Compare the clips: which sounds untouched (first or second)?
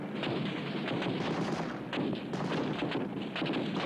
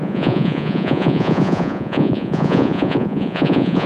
first